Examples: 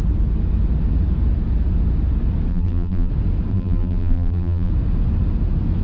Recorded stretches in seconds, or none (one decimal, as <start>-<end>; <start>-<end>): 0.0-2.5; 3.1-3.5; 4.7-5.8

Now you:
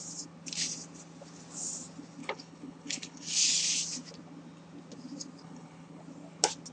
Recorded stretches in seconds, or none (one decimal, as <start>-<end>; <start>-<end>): 0.0-2.2; 3.5-5.4; 6.0-6.7

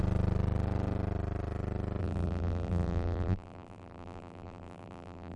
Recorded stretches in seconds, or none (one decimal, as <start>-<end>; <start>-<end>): 0.0-2.0